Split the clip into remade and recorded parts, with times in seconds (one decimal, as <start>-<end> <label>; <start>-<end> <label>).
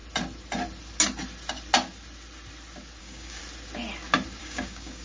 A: 0.0-3.0 recorded; 3.0-3.4 remade; 3.4-4.4 recorded; 4.4-5.0 remade